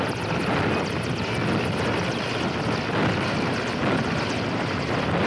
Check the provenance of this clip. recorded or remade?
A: recorded